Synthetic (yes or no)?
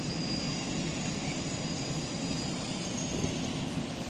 no